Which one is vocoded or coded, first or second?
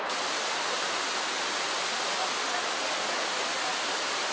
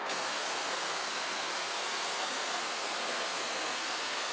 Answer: second